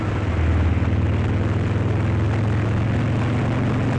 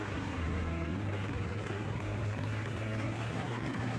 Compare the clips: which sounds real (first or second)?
first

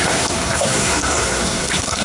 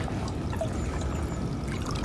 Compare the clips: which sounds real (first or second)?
second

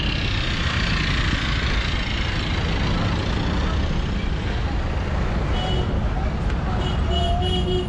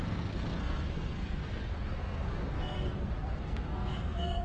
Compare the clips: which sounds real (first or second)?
first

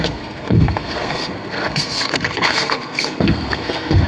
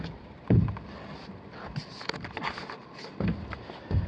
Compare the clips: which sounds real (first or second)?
second